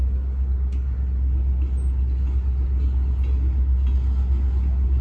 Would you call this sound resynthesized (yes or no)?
no